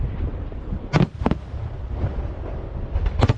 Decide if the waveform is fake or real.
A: real